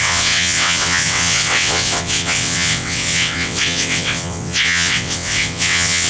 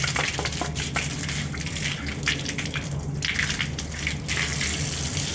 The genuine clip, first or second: second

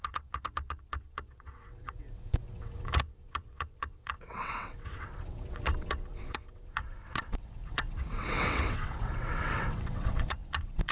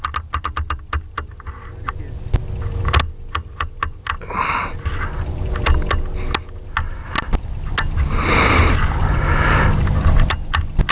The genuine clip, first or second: second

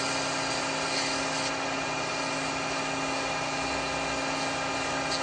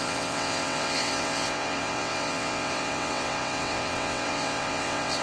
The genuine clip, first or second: first